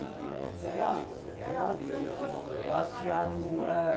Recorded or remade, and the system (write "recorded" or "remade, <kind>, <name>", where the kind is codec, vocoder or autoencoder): remade, vocoder, WaveNeXt